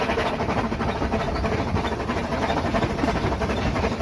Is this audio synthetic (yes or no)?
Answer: yes